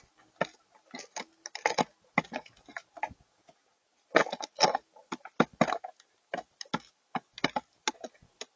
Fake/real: real